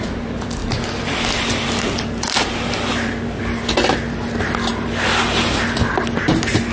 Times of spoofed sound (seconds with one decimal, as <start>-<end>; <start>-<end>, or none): none